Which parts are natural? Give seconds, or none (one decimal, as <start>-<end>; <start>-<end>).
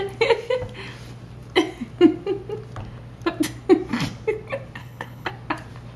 0.0-4.8; 5.3-6.0